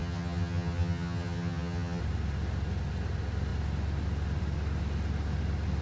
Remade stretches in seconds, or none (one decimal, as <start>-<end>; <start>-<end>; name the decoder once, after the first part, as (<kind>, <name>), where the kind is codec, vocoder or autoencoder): 0.0-2.0 (vocoder, HiFi-GAN)